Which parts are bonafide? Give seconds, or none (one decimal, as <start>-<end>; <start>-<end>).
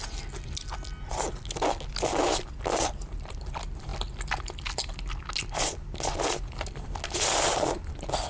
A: 0.0-8.3